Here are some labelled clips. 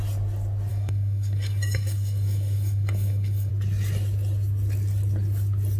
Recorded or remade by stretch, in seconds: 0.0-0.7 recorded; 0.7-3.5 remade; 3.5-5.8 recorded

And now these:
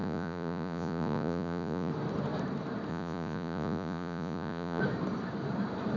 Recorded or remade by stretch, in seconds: 0.0-1.9 remade; 1.9-2.9 recorded; 2.9-4.8 remade; 4.8-6.0 recorded

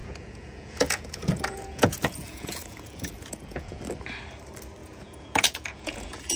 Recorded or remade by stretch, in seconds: 0.0-3.8 remade; 3.8-4.8 recorded; 4.8-6.4 remade

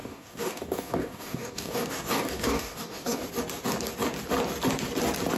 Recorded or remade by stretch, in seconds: 0.0-3.2 remade; 3.2-5.4 recorded

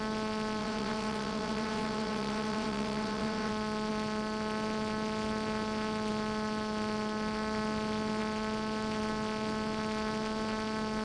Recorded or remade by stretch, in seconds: 0.0-0.6 recorded; 0.6-3.5 remade; 3.5-11.0 recorded

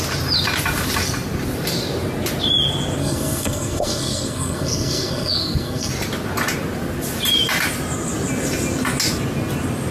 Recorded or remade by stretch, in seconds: 0.0-3.0 recorded; 3.0-5.9 remade; 5.9-9.9 recorded

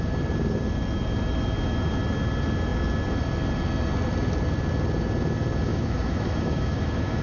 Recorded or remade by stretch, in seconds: 0.0-5.7 recorded; 5.7-7.2 remade

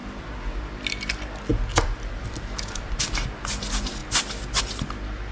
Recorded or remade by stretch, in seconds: 0.0-0.7 remade; 0.7-1.5 recorded; 1.5-3.0 remade; 3.0-5.3 recorded